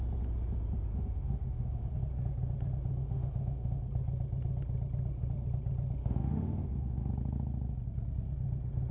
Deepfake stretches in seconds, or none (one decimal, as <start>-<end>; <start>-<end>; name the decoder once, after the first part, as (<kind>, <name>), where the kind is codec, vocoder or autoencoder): 0.9-1.9 (autoencoder, DAC-VAE); 3.0-3.8; 6.0-7.1